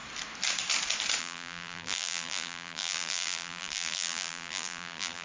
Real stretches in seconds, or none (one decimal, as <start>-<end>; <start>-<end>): 0.0-1.2